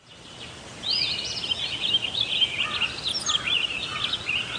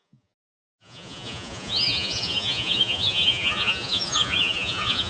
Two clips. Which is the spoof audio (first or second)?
second